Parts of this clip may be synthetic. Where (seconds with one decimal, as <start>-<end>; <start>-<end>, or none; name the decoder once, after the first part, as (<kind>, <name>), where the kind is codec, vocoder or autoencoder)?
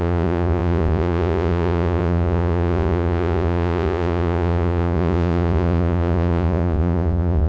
0.0-7.5 (vocoder, Vocos)